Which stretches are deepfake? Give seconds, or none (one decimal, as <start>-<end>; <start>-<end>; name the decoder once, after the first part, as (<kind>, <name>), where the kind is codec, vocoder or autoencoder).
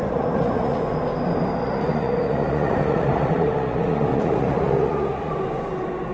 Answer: 0.0-0.8 (vocoder, Vocos); 1.6-5.3